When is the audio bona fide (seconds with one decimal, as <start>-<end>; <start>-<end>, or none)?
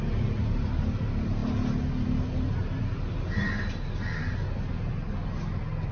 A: 0.0-5.9